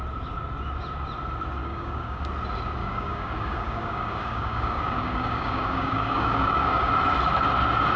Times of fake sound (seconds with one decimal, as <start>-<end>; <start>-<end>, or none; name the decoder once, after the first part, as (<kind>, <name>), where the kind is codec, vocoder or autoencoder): 1.6-2.2 (codec, DAC); 2.8-6.9